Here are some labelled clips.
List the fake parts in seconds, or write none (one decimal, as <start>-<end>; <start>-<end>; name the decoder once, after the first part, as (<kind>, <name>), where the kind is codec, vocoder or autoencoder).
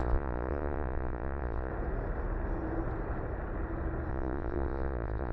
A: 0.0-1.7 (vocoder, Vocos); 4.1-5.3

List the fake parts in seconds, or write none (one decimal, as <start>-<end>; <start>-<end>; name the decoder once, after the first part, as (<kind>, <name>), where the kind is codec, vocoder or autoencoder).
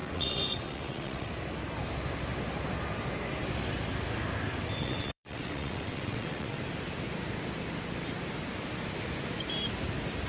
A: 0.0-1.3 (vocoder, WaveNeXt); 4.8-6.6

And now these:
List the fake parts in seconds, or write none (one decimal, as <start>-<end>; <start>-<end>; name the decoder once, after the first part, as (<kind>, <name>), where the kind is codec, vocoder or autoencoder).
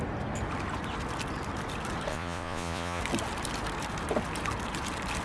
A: 2.1-3.0 (vocoder, Vocos)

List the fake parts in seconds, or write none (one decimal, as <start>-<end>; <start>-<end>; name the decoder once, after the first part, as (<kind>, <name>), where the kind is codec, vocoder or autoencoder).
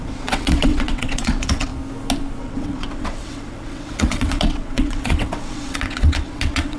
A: 0.0-1.7 (vocoder, WaveNeXt); 2.4-6.8